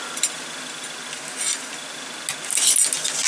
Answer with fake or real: real